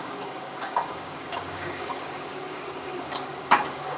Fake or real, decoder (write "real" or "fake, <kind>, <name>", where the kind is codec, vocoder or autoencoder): fake, codec, DAC